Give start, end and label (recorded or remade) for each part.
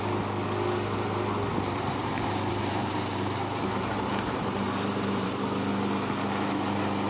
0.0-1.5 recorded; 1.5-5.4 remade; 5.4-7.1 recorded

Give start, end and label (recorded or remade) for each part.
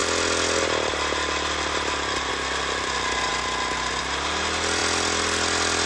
0.0-5.9 recorded